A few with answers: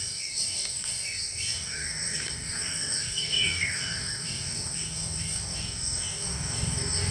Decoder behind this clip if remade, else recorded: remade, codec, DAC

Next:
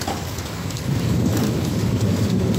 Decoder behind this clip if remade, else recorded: remade, codec, DAC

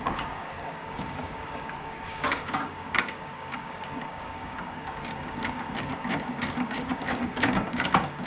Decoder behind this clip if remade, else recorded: remade, codec, DAC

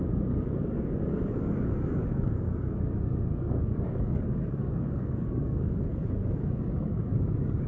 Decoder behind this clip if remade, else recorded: remade, codec, DAC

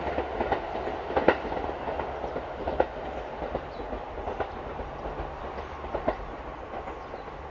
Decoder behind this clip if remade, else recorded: recorded